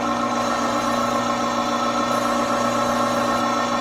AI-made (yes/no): no